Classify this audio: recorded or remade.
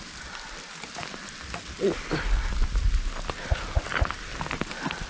recorded